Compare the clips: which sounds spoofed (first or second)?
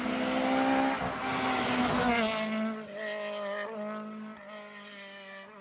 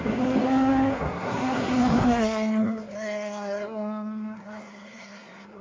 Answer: second